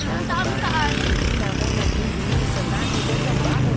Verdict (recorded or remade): recorded